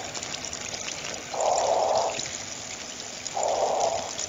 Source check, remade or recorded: recorded